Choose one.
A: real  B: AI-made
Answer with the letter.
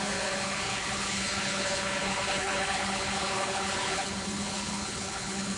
B